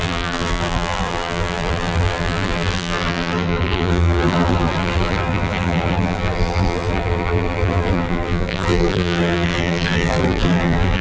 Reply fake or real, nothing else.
fake